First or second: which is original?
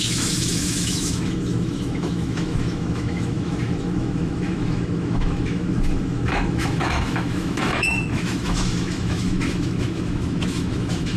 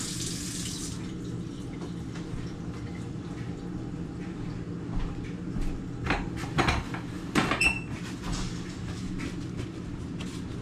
second